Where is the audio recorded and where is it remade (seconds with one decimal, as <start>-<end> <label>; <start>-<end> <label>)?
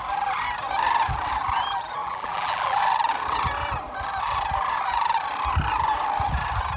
0.0-2.0 recorded; 2.0-2.8 remade; 2.8-6.8 recorded